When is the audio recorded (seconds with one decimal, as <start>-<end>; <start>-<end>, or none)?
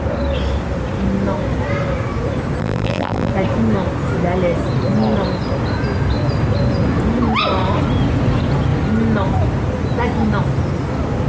0.0-2.6; 3.3-11.3